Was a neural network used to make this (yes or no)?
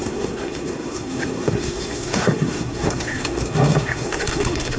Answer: yes